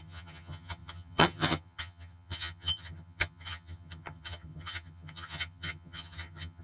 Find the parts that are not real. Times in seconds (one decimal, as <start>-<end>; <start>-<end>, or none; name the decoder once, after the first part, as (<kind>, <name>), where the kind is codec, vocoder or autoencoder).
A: 0.0-6.6 (vocoder, HiFi-GAN)